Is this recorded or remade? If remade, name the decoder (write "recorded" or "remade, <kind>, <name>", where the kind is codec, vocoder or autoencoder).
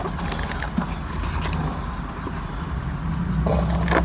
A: recorded